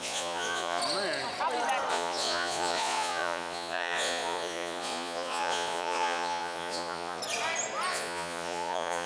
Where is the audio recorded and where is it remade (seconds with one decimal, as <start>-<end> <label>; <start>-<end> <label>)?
0.0-0.8 remade; 0.8-1.9 recorded; 1.9-7.2 remade; 7.2-7.9 recorded; 7.9-9.1 remade